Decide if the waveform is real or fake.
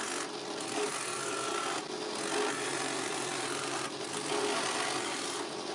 real